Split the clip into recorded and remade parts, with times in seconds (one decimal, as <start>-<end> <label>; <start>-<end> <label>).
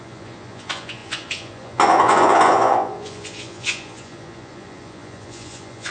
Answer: 0.0-5.9 remade